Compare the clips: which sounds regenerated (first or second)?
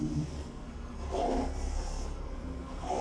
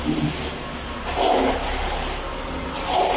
first